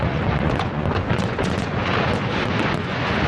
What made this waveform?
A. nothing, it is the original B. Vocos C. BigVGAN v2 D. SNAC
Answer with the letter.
B